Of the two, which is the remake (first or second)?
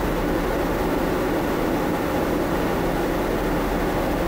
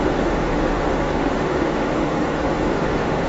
second